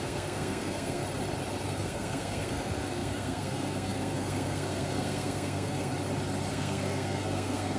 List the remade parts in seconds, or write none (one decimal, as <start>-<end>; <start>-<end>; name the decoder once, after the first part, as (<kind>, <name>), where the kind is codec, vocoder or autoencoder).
0.0-1.0 (codec, SNAC); 1.6-5.9; 6.5-7.8